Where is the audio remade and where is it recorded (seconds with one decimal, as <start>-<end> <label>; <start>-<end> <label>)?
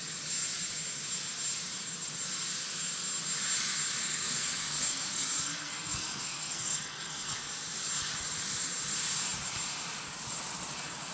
0.0-4.0 recorded; 4.0-7.4 remade; 7.4-11.1 recorded